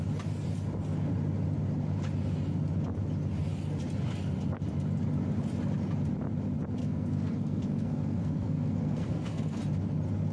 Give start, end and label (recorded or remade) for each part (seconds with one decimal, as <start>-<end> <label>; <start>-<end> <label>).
0.0-6.8 recorded; 6.8-9.6 remade; 9.6-10.3 recorded